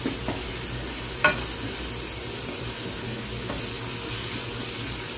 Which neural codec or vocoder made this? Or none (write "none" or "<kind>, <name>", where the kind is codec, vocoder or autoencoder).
none